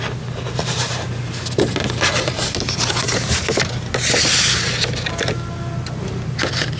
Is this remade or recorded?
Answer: recorded